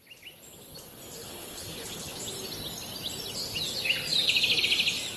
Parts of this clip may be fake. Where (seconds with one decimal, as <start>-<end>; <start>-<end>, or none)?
1.2-2.2